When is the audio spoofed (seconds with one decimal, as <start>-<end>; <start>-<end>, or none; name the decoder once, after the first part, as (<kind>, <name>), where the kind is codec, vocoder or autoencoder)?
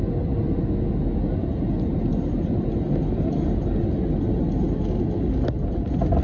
none